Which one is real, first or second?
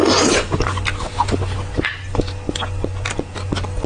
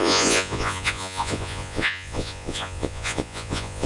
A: first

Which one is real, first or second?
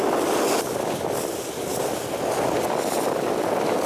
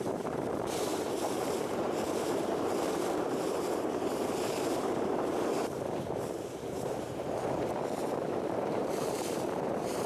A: first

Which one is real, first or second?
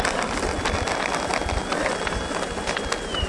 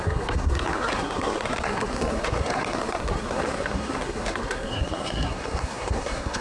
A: first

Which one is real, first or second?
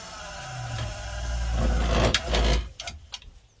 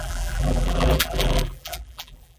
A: first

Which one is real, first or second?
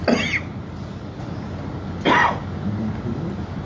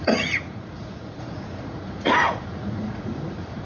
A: first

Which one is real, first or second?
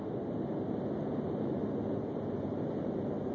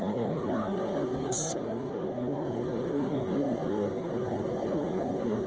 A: first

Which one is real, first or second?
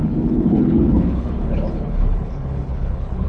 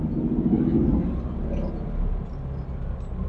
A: second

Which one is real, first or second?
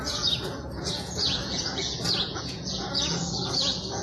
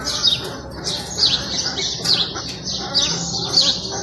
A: second